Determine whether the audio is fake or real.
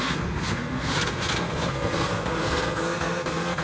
fake